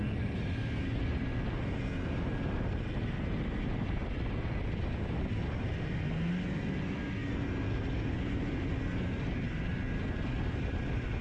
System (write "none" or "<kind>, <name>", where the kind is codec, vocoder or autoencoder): none